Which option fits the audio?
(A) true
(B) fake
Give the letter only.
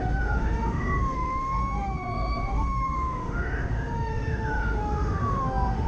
B